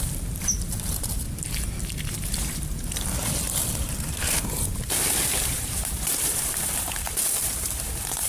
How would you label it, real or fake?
fake